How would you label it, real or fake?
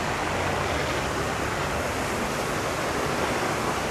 real